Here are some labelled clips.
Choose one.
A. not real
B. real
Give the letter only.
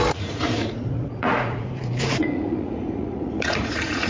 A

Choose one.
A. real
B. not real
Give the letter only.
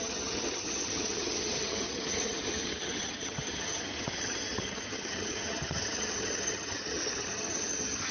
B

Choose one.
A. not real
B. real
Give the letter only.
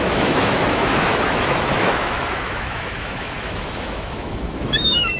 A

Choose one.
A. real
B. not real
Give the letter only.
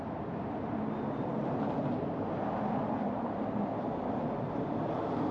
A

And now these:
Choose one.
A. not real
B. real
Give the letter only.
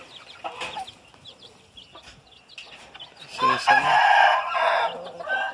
B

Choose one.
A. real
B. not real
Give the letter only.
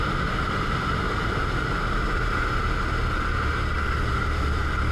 A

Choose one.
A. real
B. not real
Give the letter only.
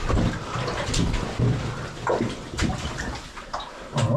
B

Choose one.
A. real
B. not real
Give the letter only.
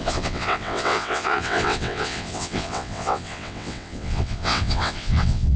B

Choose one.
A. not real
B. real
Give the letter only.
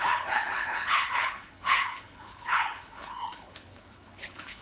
A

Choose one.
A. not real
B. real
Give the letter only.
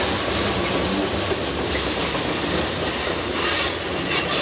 B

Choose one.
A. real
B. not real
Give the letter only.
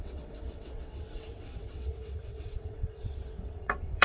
B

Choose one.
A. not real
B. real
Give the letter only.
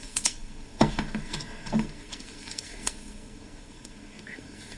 A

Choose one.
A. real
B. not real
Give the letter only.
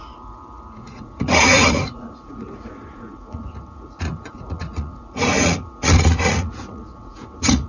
B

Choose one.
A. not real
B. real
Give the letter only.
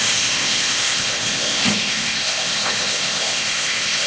A